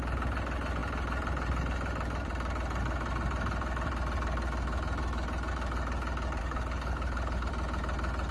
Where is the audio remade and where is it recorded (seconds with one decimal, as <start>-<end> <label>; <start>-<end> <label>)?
0.0-6.4 recorded; 6.4-7.5 remade; 7.5-8.3 recorded